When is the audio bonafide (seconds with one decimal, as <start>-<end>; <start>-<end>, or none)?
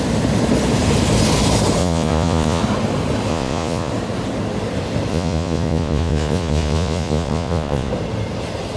0.0-1.8; 2.6-3.3; 3.9-5.1; 7.9-8.8